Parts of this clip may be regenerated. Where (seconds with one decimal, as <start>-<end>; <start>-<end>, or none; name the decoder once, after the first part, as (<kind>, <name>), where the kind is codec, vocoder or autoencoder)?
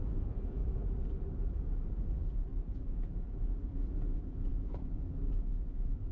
0.0-0.6 (vocoder, Vocos); 1.9-6.1